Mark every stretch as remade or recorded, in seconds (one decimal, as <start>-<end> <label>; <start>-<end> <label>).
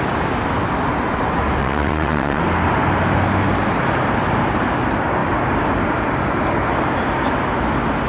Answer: 0.0-1.6 recorded; 1.6-2.4 remade; 2.4-8.1 recorded